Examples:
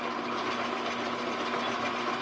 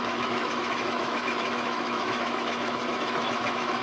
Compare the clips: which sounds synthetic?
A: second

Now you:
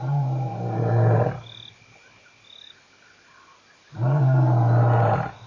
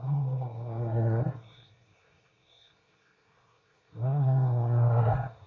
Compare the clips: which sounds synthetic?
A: second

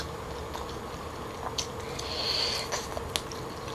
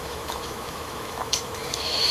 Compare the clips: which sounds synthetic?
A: second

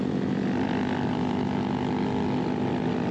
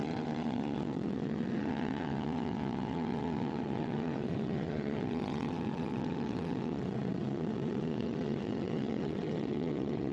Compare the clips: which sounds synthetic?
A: second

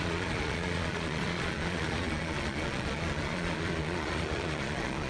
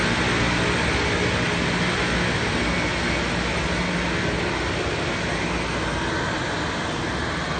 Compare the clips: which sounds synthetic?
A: first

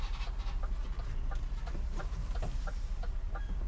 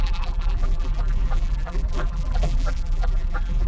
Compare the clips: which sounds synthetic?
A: second